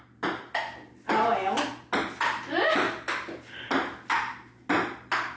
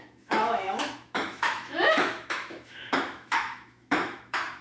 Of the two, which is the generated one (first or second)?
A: second